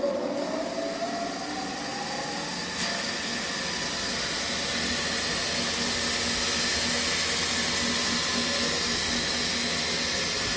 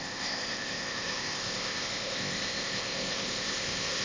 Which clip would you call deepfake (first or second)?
second